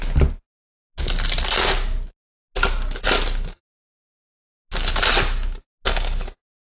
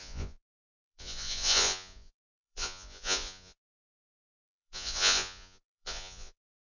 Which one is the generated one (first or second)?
second